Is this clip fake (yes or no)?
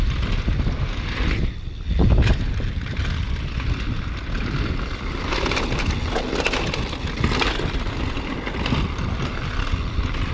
no